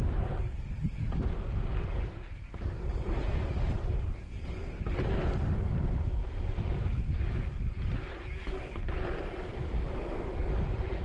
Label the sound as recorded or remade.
recorded